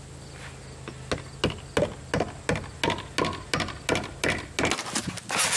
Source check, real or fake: real